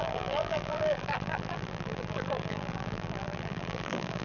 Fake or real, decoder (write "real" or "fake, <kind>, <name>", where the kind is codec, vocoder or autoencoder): fake, vocoder, BigVGAN v2